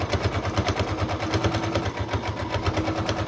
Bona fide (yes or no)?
yes